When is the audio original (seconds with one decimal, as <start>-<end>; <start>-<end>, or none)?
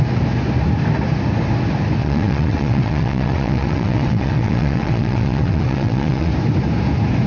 0.0-2.0; 6.3-7.3